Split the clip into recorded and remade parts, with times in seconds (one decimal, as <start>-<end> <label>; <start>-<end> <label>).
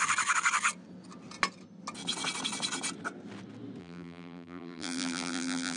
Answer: 0.0-3.8 recorded; 3.8-5.8 remade